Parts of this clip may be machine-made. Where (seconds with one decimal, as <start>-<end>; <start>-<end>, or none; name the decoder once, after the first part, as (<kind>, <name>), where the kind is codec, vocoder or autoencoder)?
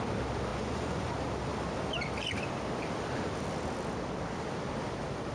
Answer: 0.5-1.1 (vocoder, Vocos)